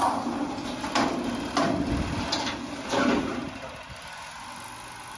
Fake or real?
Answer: real